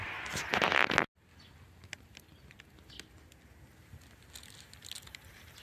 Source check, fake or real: real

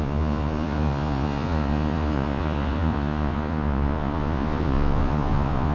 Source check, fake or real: fake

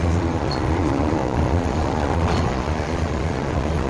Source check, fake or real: fake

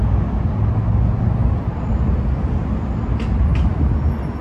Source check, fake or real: real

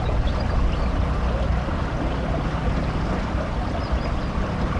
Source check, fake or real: real